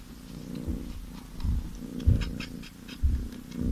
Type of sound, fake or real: real